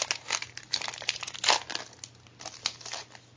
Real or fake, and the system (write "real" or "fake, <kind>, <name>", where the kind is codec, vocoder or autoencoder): real